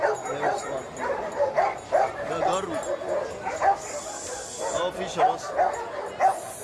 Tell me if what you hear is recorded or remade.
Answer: recorded